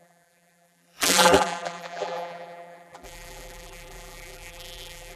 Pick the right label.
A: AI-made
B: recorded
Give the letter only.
A